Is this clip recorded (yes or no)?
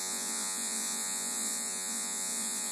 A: no